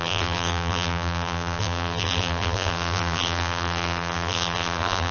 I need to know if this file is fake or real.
fake